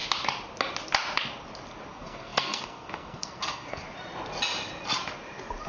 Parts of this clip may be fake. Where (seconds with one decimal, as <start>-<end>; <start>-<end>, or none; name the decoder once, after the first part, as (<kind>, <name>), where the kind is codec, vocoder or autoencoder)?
1.9-3.8 (codec, SNAC)